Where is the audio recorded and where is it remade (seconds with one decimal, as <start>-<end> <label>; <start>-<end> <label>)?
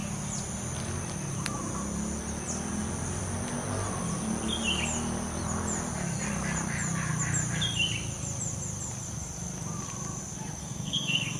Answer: 0.0-10.6 recorded; 10.6-11.4 remade